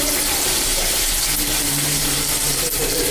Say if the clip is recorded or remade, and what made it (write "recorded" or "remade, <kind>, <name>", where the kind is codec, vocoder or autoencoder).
remade, vocoder, BigVGAN v2